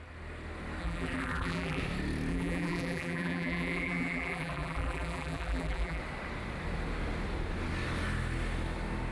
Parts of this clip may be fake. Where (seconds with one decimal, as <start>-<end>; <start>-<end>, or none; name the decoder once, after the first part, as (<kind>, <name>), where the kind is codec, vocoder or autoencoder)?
0.8-1.8 (vocoder, BigVGAN v2); 2.3-6.0